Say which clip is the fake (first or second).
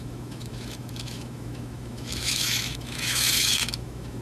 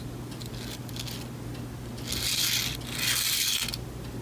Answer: first